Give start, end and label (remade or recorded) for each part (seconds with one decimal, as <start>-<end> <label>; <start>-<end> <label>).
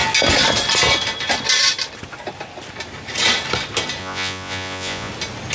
0.0-4.0 recorded; 4.0-5.1 remade; 5.1-5.5 recorded